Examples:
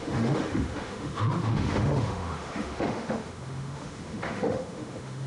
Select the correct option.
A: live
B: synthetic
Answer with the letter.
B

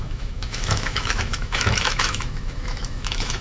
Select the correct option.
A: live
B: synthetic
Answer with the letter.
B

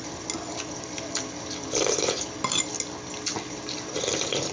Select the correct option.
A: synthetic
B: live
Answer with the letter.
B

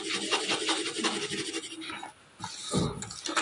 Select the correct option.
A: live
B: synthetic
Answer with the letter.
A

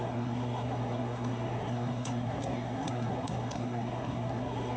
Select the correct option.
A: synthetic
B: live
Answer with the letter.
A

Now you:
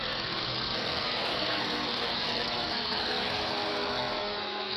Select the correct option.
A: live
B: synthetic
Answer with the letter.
B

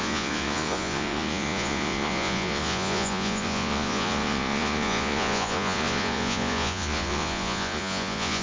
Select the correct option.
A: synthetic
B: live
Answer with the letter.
A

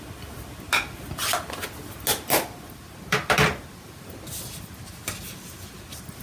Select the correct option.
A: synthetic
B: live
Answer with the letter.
B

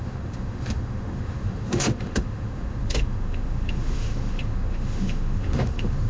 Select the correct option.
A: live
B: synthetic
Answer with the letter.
B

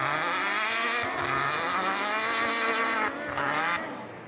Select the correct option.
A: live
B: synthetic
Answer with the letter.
A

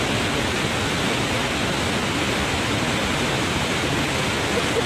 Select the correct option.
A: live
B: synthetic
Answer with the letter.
A